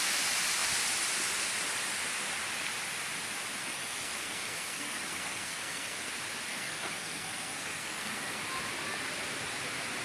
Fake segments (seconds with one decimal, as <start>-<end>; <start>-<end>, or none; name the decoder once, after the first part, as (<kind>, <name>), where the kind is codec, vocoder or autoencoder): 3.6-6.1 (codec, SNAC); 6.5-8.4